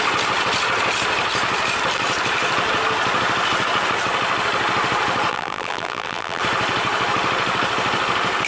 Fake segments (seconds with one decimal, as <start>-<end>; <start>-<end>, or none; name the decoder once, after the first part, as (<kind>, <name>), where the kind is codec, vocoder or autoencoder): 5.3-6.4 (vocoder, BigVGAN v2)